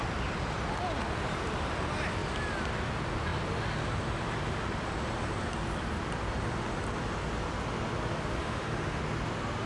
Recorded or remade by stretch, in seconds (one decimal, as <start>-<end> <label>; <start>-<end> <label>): 0.0-8.4 recorded; 8.4-9.0 remade; 9.0-9.7 recorded